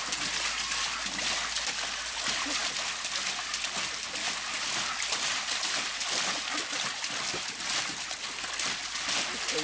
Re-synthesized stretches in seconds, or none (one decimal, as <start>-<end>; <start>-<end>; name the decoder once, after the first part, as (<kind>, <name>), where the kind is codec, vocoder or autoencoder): none